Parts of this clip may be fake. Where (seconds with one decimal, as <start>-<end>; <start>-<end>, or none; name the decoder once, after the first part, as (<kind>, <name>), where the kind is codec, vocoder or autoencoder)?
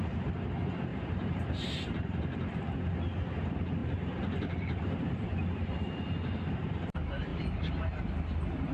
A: 0.9-2.2 (vocoder, BigVGAN v2); 3.8-6.0; 7.3-8.1